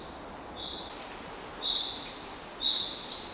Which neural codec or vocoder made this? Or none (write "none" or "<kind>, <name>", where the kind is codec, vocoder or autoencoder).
none